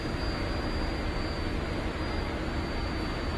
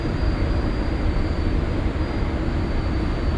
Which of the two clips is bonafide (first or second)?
first